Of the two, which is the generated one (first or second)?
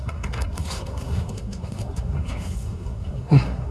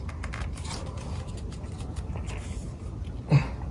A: first